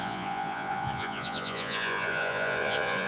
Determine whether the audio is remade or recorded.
remade